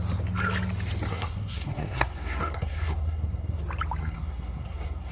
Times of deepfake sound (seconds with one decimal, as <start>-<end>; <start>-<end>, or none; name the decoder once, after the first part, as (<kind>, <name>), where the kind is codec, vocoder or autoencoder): 1.1-3.6 (codec, SNAC); 4.0-5.1